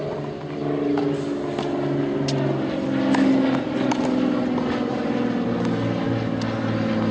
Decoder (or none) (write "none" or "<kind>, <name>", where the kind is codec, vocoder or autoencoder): none